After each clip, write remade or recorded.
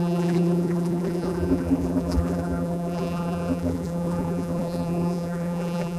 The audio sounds remade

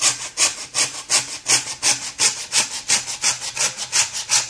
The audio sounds recorded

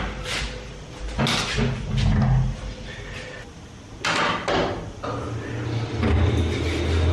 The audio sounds recorded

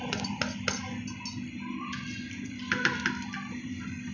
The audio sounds recorded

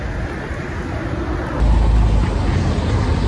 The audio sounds recorded